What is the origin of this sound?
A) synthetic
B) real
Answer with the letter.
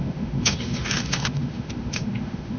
A